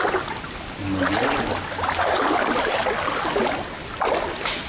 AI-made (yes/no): no